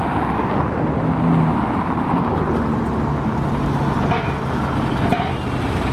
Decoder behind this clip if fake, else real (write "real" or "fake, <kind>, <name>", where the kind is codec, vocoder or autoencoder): real